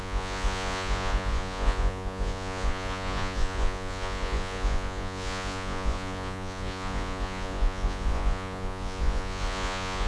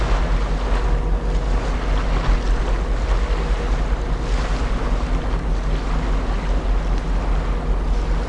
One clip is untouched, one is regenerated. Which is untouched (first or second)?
second